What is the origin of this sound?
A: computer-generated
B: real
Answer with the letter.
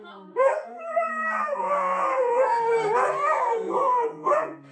A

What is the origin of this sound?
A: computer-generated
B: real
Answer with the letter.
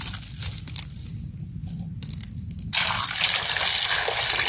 B